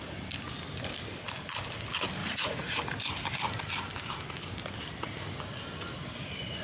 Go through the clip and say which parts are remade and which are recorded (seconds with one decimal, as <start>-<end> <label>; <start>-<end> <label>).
0.0-2.2 recorded; 2.2-2.8 remade; 2.8-6.6 recorded